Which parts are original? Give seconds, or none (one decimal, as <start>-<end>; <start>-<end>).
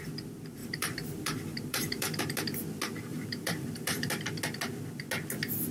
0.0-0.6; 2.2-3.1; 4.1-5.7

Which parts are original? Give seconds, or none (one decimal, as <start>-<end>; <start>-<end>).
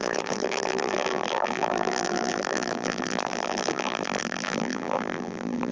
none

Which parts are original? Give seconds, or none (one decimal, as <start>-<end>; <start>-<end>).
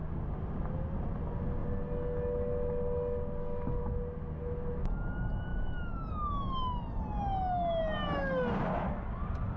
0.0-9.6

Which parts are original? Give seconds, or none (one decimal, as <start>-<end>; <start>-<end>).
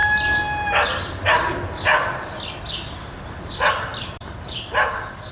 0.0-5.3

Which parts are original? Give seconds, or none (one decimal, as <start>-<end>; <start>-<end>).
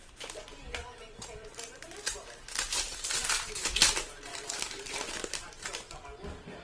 0.0-4.3; 4.9-6.6